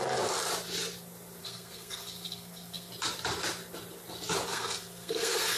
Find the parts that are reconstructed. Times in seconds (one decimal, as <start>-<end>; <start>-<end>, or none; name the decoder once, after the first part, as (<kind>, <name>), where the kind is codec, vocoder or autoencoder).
1.4-2.9 (codec, SNAC); 4.5-5.6